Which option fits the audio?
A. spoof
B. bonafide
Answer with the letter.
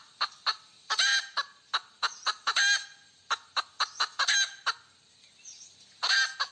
B